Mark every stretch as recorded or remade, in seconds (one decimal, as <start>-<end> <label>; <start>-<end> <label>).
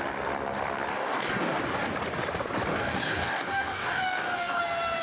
0.0-0.9 recorded; 0.9-1.6 remade; 1.6-2.7 recorded; 2.7-4.6 remade; 4.6-5.0 recorded